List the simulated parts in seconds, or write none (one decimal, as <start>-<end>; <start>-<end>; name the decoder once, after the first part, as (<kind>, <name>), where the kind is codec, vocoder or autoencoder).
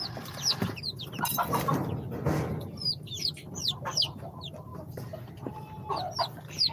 4.7-5.3 (vocoder, BigVGAN v2)